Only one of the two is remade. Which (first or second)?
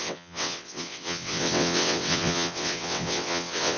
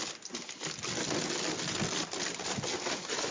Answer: first